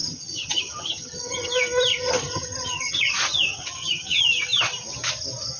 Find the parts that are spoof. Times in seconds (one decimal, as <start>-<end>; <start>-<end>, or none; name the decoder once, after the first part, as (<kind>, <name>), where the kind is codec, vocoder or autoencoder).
0.0-1.5 (vocoder, HiFi-GAN); 1.9-3.0; 3.5-4.2

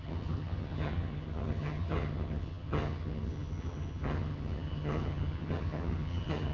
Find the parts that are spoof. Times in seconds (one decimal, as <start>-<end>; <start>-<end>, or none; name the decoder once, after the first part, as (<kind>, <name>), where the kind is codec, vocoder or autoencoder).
0.0-6.5 (vocoder, HiFi-GAN)

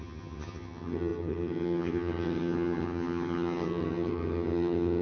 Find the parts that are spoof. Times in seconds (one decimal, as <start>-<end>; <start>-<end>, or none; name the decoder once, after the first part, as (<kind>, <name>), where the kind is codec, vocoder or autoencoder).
0.0-5.0 (vocoder, HiFi-GAN)

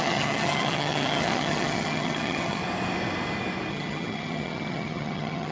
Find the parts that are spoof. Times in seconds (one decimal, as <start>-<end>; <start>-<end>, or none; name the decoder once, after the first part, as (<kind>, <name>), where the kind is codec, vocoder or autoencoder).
0.0-2.6 (vocoder, HiFi-GAN); 3.7-5.5

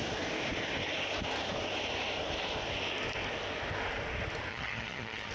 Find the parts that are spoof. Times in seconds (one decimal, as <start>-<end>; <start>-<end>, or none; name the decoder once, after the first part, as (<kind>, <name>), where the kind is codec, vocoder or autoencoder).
4.5-5.3 (vocoder, HiFi-GAN)